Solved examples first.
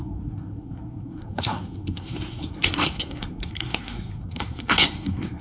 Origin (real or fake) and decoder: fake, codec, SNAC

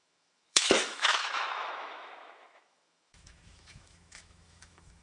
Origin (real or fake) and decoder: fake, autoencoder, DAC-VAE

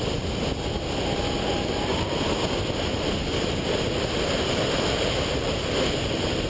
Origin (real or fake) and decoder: real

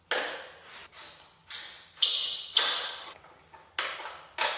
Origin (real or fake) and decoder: real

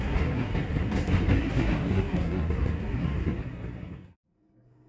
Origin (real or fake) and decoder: fake, codec, SNAC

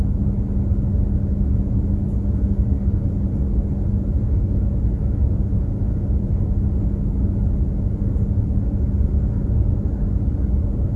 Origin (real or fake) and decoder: real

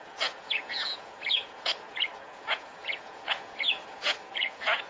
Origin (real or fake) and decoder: fake, vocoder, Vocos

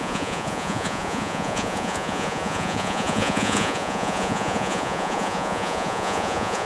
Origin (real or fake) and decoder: fake, vocoder, Vocos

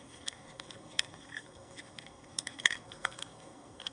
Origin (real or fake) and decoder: fake, codec, SNAC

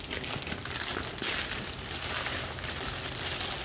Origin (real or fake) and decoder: real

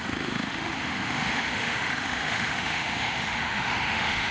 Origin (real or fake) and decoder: fake, autoencoder, DAC-VAE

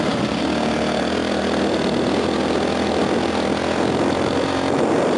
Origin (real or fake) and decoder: real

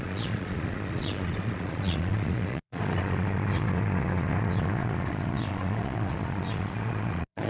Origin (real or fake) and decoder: fake, vocoder, Vocos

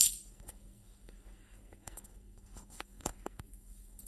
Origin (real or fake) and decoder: fake, codec, SNAC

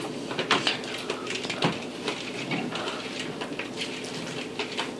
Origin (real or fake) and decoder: real